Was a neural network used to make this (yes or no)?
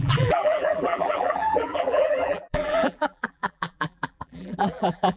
yes